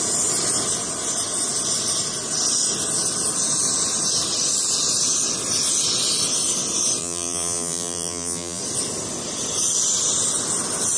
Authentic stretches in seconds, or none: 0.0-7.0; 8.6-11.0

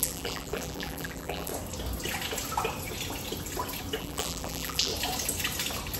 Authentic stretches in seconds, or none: 1.5-4.0; 4.9-6.0

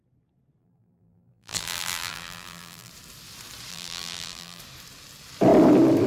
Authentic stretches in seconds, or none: 0.0-0.6; 2.9-3.7; 4.6-6.1

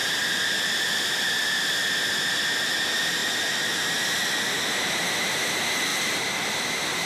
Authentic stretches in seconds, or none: 1.6-5.9

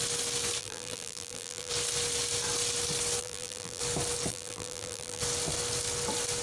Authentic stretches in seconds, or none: 0.0-0.6; 1.7-3.2; 3.8-4.3; 5.2-6.4